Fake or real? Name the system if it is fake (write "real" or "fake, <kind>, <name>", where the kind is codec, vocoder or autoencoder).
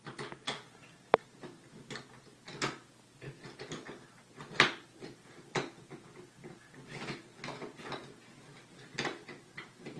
real